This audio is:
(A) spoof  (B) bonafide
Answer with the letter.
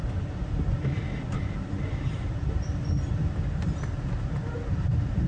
B